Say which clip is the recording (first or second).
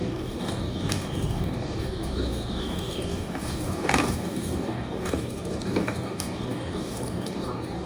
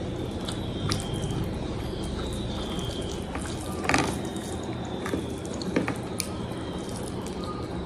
second